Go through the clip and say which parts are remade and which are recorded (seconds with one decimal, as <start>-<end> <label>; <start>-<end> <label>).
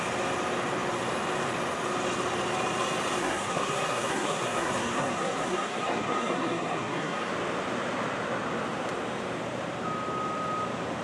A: 0.0-3.2 recorded; 3.2-7.3 remade; 7.3-11.0 recorded